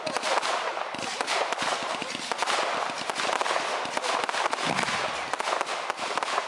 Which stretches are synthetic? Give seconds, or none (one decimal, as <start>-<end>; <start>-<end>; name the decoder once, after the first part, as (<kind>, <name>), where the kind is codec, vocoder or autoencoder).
none